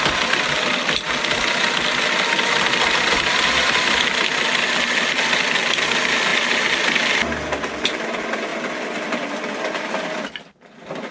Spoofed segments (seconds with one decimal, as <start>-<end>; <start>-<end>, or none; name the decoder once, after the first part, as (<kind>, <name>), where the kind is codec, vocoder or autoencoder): none